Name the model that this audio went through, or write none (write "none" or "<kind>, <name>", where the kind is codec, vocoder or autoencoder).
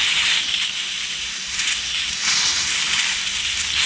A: none